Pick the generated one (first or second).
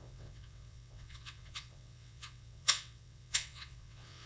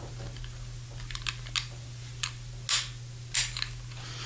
first